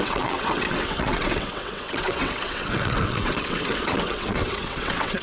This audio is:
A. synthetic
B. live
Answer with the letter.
A